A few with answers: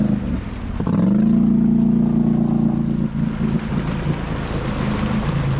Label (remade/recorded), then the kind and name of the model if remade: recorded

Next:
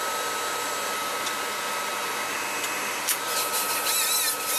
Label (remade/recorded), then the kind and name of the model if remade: recorded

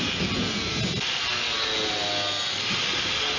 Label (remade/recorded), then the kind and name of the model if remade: recorded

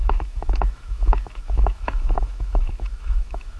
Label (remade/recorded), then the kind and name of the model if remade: remade, autoencoder, DAC-VAE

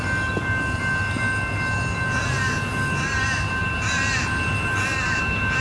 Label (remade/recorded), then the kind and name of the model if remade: recorded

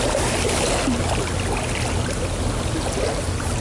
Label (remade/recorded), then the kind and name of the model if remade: recorded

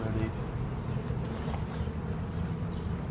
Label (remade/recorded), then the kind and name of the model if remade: recorded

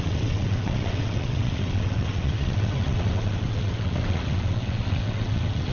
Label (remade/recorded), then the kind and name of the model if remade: remade, vocoder, WaveNeXt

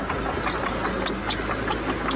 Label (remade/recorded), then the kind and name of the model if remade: recorded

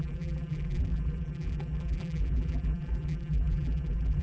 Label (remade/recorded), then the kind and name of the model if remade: remade, vocoder, BigVGAN v2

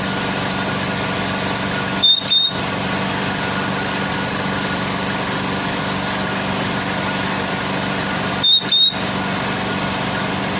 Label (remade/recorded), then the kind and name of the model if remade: recorded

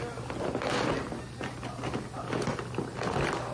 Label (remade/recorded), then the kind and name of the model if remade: recorded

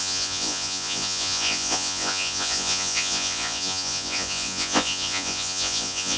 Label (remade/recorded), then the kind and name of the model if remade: remade, vocoder, Vocos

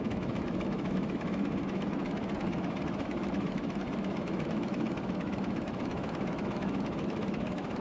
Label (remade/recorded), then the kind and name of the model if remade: remade, autoencoder, DAC-VAE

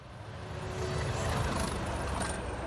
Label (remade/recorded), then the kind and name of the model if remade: recorded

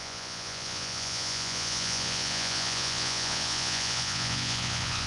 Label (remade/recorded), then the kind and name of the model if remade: remade, vocoder, Vocos